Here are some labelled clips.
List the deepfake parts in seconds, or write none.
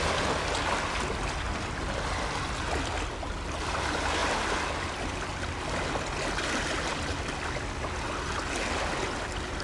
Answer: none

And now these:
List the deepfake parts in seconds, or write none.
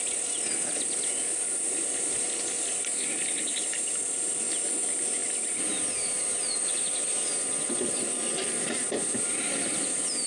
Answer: none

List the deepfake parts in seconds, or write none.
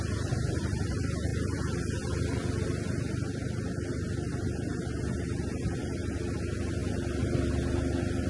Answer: none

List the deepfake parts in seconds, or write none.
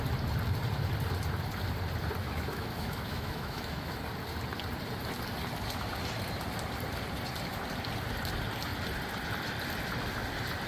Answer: 2.2-4.0 (autoencoder, DAC-VAE)